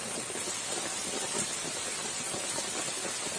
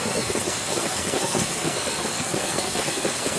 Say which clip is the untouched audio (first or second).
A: first